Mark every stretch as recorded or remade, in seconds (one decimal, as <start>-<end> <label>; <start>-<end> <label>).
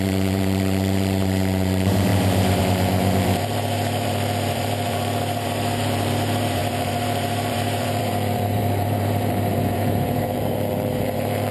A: 0.0-11.5 remade